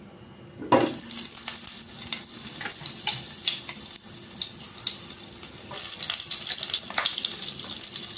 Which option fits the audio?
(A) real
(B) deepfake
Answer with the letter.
A